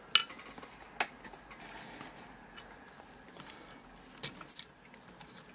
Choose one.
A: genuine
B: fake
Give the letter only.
A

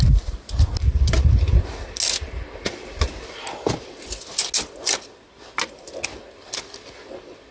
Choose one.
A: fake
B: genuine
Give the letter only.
B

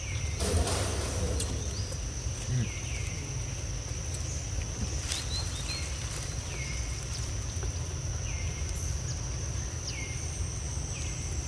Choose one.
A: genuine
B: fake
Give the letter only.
A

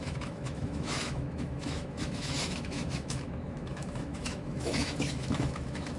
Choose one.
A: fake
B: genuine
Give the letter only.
A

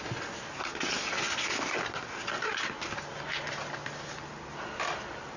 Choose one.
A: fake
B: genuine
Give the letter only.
B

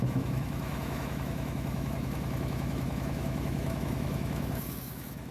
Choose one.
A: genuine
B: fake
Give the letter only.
B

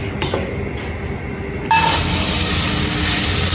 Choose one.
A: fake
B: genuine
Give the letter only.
B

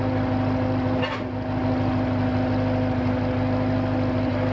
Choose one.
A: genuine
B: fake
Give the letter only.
A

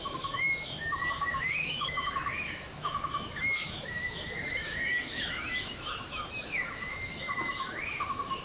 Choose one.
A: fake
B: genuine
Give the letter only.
A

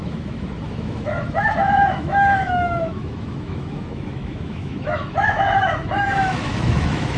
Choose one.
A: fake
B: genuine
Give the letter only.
A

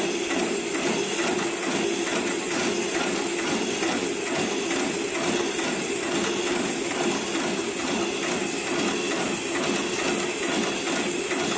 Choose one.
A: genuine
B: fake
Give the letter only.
A